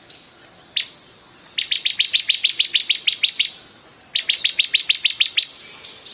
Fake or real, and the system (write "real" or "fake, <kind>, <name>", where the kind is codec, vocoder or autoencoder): real